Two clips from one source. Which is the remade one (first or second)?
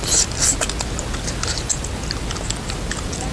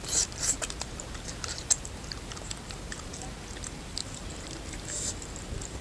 second